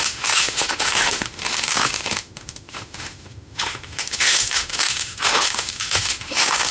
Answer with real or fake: fake